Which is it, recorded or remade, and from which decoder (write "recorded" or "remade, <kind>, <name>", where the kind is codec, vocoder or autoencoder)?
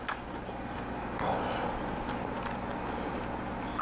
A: recorded